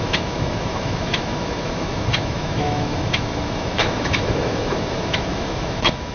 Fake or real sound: fake